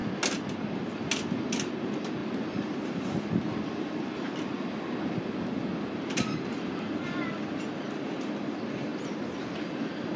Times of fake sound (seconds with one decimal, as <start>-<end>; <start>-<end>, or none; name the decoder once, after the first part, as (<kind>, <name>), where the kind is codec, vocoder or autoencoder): none